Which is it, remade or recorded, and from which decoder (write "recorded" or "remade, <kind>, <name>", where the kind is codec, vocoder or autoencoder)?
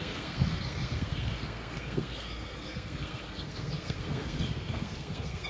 remade, codec, SNAC